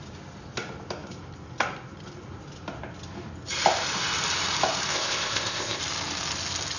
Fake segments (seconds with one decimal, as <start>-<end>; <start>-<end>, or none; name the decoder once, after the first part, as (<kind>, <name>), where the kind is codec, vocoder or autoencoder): 4.9-5.8 (codec, ZipCodec)